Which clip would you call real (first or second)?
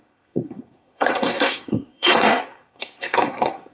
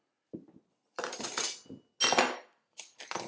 second